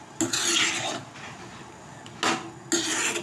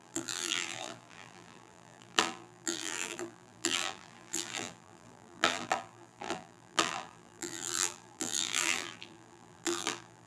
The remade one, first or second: second